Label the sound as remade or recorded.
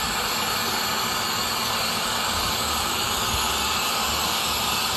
remade